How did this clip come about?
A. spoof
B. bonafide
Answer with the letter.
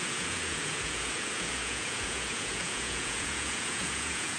A